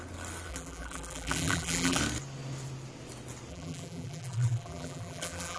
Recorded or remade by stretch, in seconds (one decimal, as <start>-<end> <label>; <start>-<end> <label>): 0.0-0.5 recorded; 0.5-2.0 remade; 2.0-3.5 recorded; 3.5-5.6 remade